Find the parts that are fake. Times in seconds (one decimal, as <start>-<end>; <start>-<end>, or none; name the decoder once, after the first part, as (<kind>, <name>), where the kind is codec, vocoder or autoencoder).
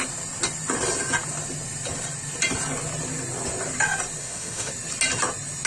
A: 4.2-4.7 (autoencoder, DAC-VAE)